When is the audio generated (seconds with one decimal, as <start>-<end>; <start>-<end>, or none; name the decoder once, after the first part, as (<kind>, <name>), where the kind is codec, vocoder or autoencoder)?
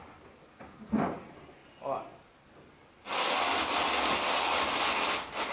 none